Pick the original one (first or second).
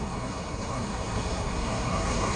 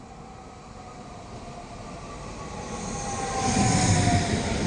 second